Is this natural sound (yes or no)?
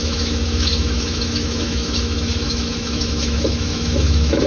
no